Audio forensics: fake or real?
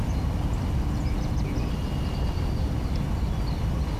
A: real